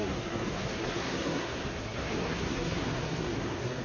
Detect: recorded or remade remade